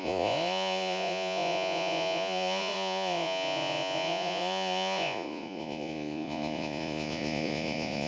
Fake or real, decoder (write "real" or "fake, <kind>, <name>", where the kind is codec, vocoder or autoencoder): fake, vocoder, Vocos